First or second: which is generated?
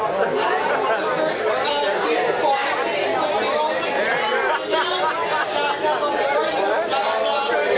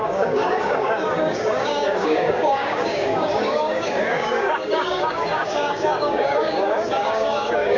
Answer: second